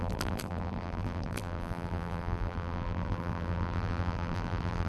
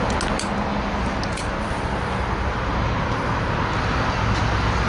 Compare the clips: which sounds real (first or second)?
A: second